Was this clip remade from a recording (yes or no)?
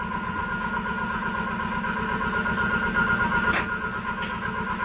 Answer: no